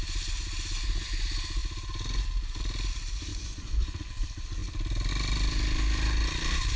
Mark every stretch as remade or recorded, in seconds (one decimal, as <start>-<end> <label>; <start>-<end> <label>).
0.0-3.3 recorded; 3.3-4.1 remade; 4.1-6.8 recorded